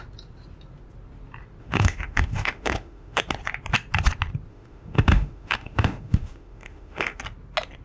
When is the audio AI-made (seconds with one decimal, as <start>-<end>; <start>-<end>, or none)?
1.6-3.2; 4.5-7.2